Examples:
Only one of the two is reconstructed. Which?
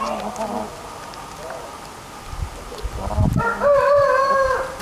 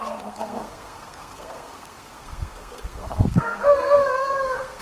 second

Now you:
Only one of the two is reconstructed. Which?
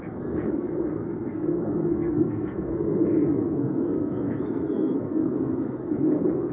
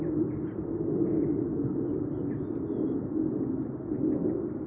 first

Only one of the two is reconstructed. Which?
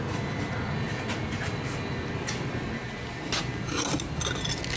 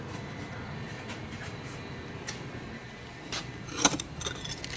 second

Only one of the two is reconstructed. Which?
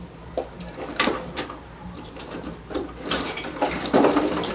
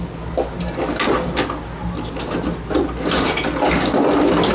first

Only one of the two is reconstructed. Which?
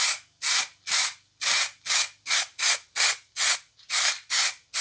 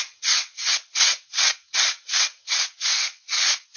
second